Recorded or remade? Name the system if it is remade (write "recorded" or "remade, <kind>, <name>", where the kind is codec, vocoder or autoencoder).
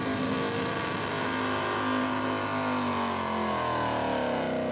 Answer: recorded